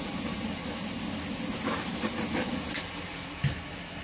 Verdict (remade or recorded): recorded